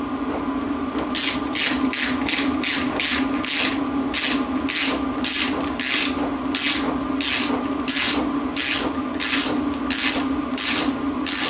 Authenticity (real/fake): real